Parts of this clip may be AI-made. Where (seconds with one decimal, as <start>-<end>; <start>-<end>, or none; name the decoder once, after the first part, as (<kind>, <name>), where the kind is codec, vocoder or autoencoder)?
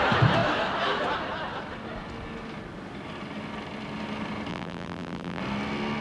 4.5-5.4 (vocoder, BigVGAN v2)